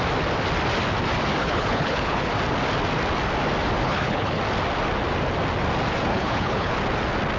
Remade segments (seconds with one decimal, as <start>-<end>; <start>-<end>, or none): 1.4-2.3; 3.8-4.4; 6.1-6.7